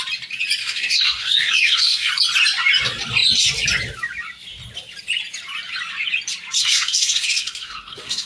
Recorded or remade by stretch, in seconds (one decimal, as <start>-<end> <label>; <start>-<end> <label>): 0.0-0.6 recorded; 0.6-2.1 remade; 2.1-6.6 recorded; 6.6-8.3 remade